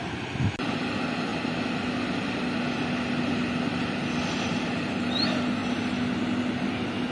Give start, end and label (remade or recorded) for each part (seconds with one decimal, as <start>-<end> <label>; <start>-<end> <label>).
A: 0.0-7.1 recorded